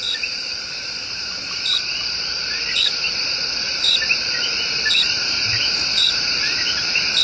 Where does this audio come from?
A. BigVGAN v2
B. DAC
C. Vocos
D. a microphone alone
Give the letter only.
A